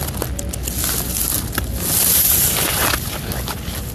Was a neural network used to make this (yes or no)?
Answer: no